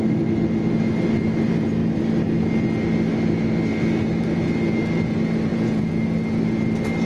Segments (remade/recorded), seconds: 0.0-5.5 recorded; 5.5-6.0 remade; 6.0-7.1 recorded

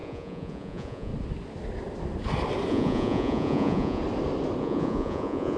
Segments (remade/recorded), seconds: 0.0-1.1 remade; 1.1-2.7 recorded; 2.7-4.0 remade; 4.0-4.6 recorded; 4.6-5.6 remade

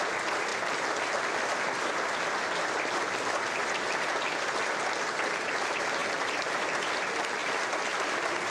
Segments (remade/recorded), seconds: 0.0-8.5 recorded